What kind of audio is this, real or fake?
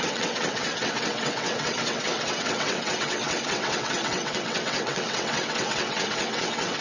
fake